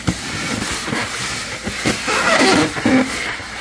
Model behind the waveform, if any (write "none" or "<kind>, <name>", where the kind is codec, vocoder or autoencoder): vocoder, BigVGAN v2